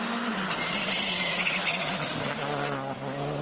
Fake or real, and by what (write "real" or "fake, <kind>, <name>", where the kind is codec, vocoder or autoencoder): real